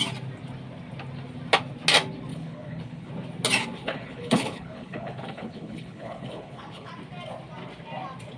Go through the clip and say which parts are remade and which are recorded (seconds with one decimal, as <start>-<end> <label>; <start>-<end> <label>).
0.0-2.3 recorded; 2.3-3.1 remade; 3.1-3.8 recorded; 3.8-6.9 remade; 6.9-8.4 recorded